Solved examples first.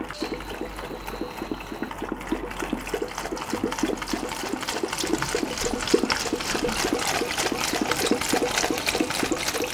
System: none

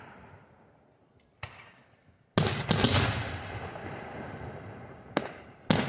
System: none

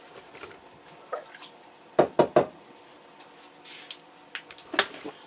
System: none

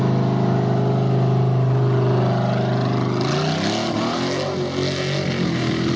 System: none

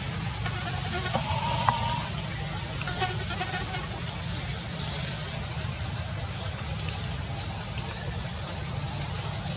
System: none